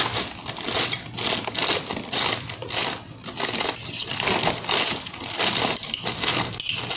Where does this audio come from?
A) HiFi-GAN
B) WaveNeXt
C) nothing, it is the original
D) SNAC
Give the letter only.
C